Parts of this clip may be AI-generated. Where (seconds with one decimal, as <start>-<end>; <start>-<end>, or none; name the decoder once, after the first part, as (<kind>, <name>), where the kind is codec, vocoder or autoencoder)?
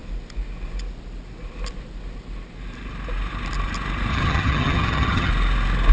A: 4.1-5.3 (vocoder, HiFi-GAN)